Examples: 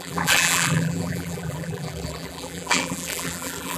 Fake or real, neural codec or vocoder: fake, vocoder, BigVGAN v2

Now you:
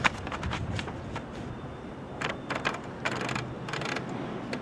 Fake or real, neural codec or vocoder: real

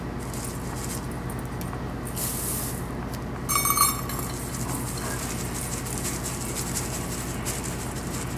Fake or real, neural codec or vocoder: real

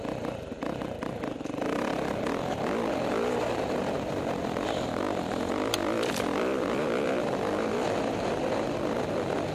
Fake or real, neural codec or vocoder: real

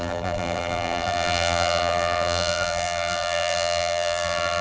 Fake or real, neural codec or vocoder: fake, vocoder, BigVGAN v2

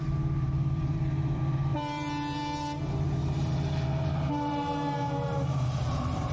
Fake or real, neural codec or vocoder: fake, vocoder, BigVGAN v2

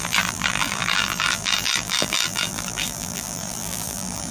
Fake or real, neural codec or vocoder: fake, vocoder, BigVGAN v2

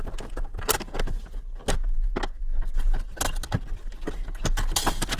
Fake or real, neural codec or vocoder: real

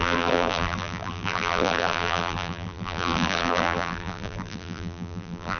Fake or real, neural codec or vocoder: fake, vocoder, BigVGAN v2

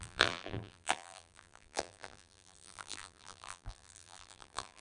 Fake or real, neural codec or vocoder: fake, vocoder, BigVGAN v2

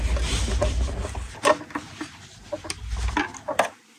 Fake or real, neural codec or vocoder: real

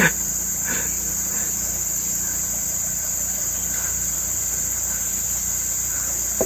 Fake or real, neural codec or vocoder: fake, vocoder, BigVGAN v2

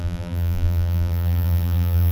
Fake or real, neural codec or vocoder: fake, vocoder, BigVGAN v2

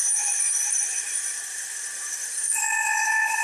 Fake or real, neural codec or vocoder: fake, vocoder, BigVGAN v2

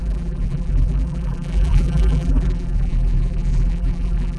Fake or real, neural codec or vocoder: fake, vocoder, BigVGAN v2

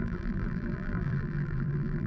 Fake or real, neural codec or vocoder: fake, vocoder, BigVGAN v2